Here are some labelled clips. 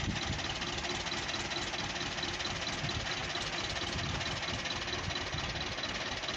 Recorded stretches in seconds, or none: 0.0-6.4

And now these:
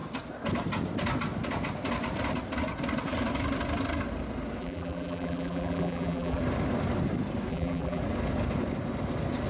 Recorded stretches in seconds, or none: 0.0-4.6; 6.4-7.5; 8.0-9.5

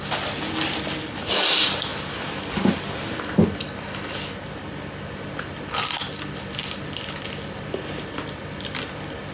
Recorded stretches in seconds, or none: 0.0-9.3

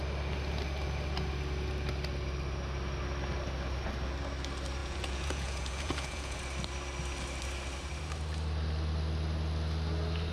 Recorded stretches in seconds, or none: 0.0-4.8; 6.4-10.3

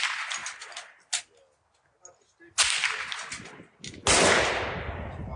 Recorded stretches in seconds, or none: 0.0-5.4

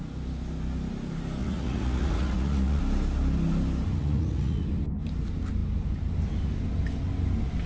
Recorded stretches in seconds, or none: 0.0-1.4; 2.8-4.0; 4.6-7.7

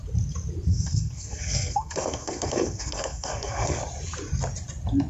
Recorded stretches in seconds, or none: 0.0-0.7; 3.8-5.1